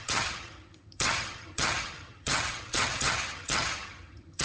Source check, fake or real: fake